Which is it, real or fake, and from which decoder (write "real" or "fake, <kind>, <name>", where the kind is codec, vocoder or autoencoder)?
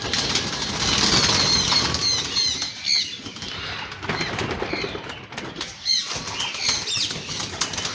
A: real